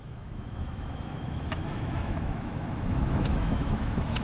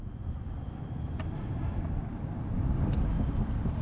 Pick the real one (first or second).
second